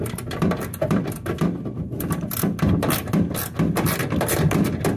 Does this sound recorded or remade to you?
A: recorded